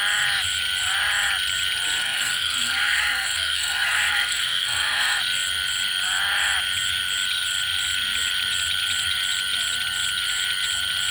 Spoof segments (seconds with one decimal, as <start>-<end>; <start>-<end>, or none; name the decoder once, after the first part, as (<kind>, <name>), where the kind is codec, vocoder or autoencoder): 2.0-5.2 (codec, SNAC)